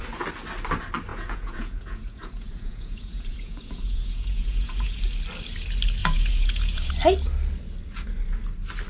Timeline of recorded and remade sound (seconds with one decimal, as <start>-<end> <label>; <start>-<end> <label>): 0.0-1.1 recorded; 1.1-5.0 remade; 5.0-6.0 recorded; 6.0-6.9 remade; 6.9-8.9 recorded